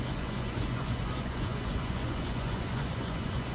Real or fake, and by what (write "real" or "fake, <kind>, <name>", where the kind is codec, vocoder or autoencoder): fake, vocoder, Vocos